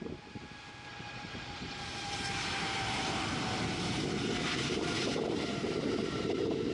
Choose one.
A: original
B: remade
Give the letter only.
A